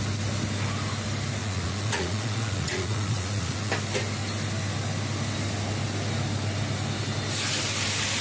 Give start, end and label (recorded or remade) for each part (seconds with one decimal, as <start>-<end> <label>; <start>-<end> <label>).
0.0-1.4 recorded; 1.4-3.7 remade; 3.7-8.2 recorded